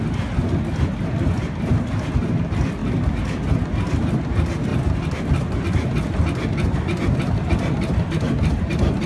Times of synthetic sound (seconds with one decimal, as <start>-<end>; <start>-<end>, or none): none